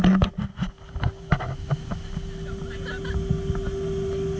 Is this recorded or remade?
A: recorded